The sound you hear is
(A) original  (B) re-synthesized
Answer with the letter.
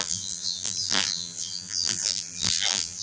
B